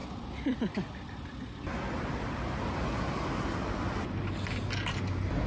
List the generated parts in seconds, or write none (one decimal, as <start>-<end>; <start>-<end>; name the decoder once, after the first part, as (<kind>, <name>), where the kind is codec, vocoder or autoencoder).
none